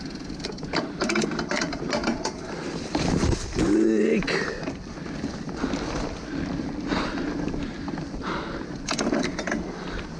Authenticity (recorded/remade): recorded